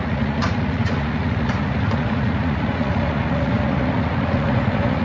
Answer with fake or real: fake